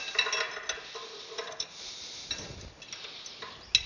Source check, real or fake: real